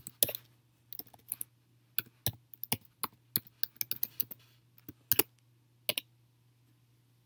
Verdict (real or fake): real